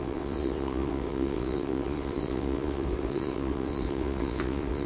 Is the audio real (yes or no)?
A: no